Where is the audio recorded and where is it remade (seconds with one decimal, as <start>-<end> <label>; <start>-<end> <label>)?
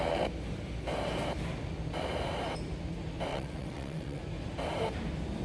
0.0-3.3 recorded; 3.3-4.2 remade; 4.2-5.4 recorded